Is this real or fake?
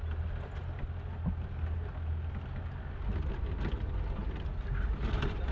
real